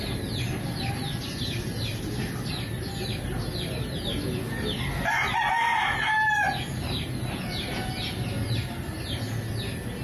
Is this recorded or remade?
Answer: recorded